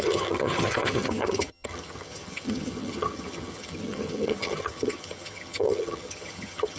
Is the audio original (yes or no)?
no